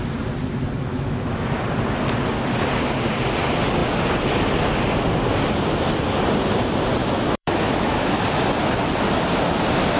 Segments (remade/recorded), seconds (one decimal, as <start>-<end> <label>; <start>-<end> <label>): 0.0-0.9 recorded; 0.9-1.6 remade; 1.6-7.0 recorded; 7.0-8.2 remade; 8.2-10.0 recorded